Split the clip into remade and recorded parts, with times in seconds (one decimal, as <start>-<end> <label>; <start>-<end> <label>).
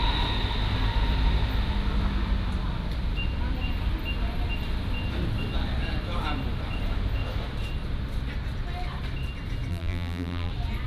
0.0-9.7 recorded; 9.7-10.5 remade; 10.5-10.9 recorded